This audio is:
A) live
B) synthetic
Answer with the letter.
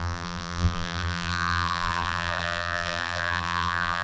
B